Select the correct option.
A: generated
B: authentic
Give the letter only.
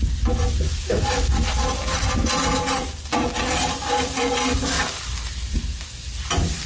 B